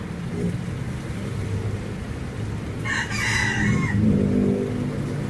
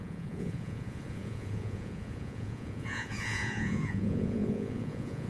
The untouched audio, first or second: first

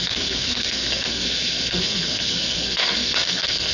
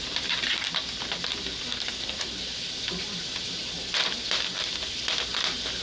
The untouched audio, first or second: second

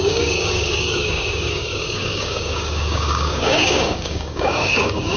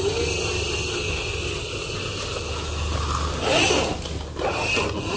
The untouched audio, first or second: second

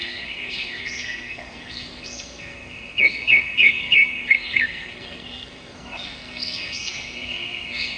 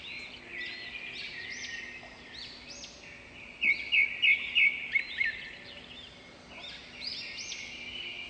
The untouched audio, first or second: second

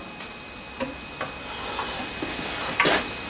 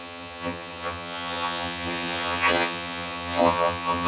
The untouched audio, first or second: first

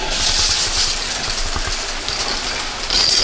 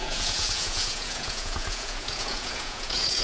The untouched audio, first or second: first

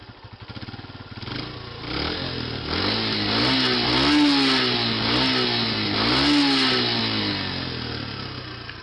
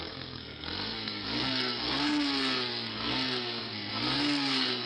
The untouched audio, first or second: first